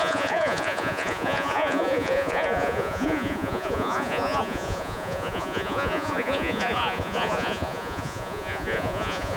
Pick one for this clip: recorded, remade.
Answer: remade